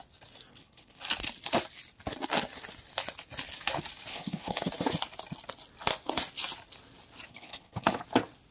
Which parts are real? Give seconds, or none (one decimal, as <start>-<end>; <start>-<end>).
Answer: 0.0-0.5; 1.0-4.1; 4.7-7.3; 8.0-8.5